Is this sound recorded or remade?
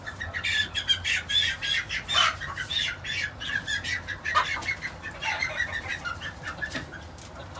recorded